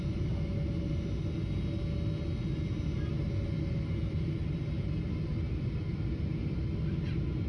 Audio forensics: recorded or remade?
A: recorded